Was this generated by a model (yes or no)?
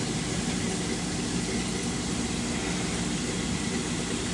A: yes